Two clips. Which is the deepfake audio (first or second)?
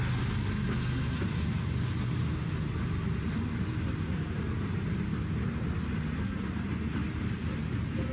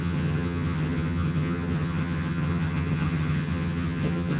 second